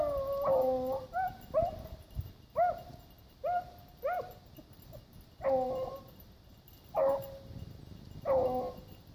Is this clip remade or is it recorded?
recorded